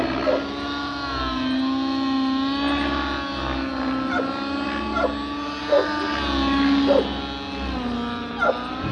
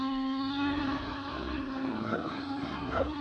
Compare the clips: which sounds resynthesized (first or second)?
second